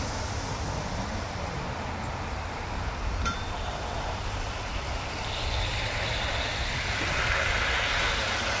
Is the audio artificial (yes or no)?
no